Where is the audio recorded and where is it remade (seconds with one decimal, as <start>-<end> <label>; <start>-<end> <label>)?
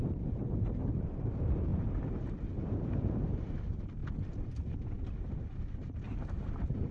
0.0-4.0 remade; 4.0-5.2 recorded; 5.2-6.9 remade